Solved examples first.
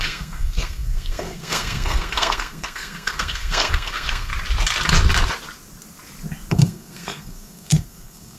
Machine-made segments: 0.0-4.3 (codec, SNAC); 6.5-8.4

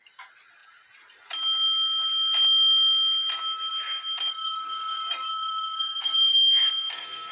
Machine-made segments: 4.3-7.3 (codec, SNAC)

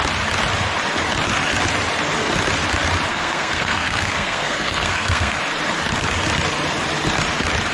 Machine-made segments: 3.1-5.4 (codec, SNAC)

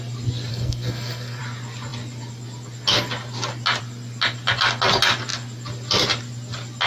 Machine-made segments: 0.5-1.4 (codec, SNAC)

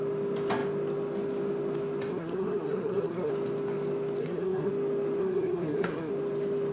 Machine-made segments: 2.1-3.3 (codec, SNAC); 4.2-4.7; 5.2-6.1